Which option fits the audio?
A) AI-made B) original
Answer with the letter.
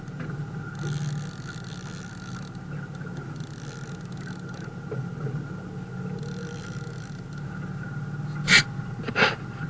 B